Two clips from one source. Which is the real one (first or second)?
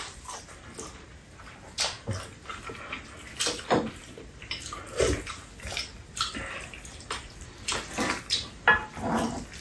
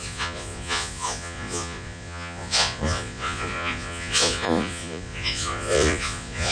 first